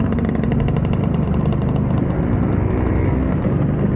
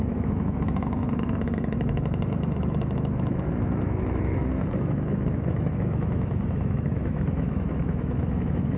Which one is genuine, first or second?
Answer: first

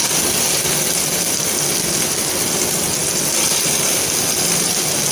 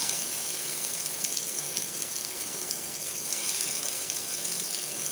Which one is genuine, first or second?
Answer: first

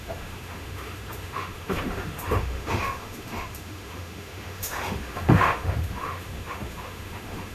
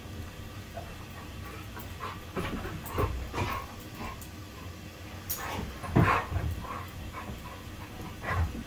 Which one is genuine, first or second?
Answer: second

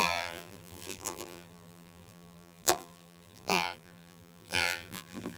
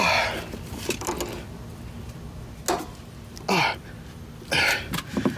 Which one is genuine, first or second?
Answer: second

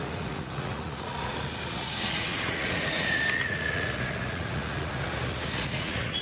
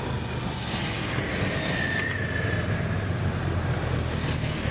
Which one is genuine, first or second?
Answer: second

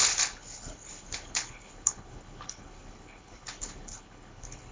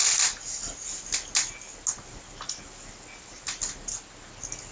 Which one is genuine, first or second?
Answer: second